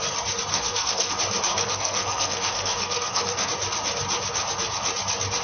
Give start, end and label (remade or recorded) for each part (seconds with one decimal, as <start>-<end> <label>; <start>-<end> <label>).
0.0-0.5 recorded; 0.5-1.1 remade; 1.1-1.5 recorded; 1.5-3.5 remade; 3.5-5.4 recorded